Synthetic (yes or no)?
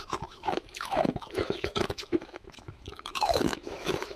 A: yes